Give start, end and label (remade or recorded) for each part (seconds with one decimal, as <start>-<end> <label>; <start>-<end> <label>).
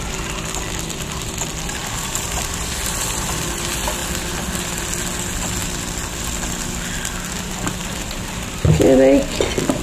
0.0-1.8 recorded; 1.8-3.3 remade; 3.3-7.8 recorded; 7.8-8.7 remade; 8.7-9.8 recorded